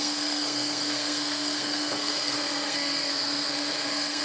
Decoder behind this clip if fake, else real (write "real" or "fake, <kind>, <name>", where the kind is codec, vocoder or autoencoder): fake, codec, SNAC